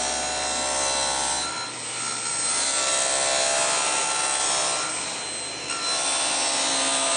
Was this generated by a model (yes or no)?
no